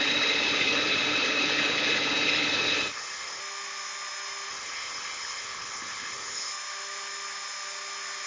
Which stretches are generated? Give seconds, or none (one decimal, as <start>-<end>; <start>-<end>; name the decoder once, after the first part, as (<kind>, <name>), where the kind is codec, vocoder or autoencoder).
0.0-3.4 (codec, HILCodec); 4.5-6.5